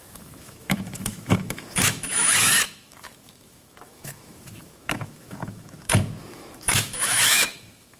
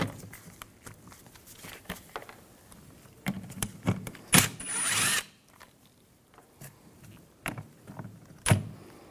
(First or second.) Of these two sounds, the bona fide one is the second